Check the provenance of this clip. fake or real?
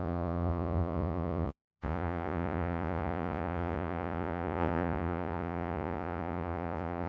fake